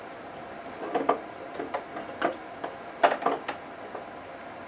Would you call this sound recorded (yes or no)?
yes